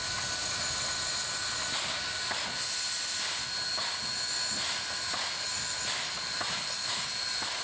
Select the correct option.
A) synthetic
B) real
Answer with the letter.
B